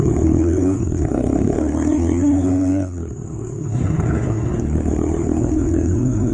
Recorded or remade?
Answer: remade